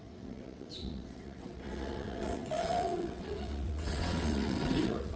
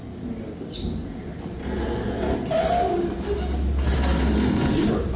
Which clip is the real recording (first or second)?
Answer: second